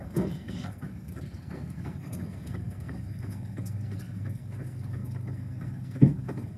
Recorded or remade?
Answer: remade